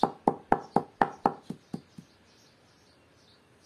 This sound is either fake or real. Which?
real